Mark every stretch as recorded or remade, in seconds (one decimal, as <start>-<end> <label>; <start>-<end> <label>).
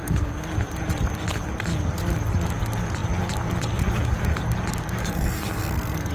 0.0-0.5 remade; 0.5-5.0 recorded; 5.0-6.1 remade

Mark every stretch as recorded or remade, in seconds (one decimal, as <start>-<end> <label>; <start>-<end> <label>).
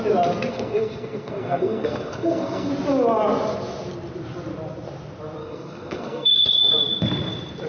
0.0-0.5 recorded; 0.5-2.7 remade; 2.7-5.4 recorded; 5.4-6.5 remade; 6.5-7.7 recorded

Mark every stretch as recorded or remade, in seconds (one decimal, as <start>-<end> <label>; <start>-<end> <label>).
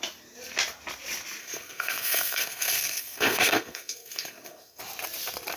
0.0-1.4 recorded; 1.4-4.8 remade; 4.8-5.6 recorded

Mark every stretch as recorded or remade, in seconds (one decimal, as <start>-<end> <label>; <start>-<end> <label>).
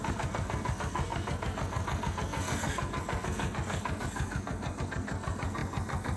0.0-6.2 remade